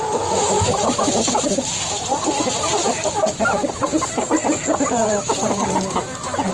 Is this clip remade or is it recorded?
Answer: remade